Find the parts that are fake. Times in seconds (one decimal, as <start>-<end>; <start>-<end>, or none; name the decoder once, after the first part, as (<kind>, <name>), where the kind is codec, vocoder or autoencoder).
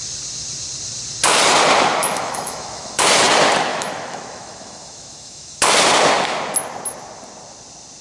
2.0-3.0 (autoencoder, DAC-VAE); 3.7-5.6